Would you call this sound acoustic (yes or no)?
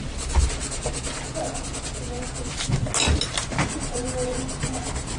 yes